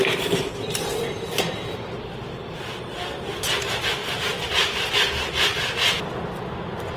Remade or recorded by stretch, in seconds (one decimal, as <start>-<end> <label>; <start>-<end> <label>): 0.0-4.0 recorded; 4.0-4.9 remade; 4.9-7.0 recorded